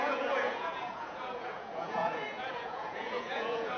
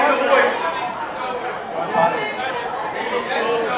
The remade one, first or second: first